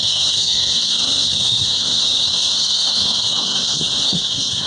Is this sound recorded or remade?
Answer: remade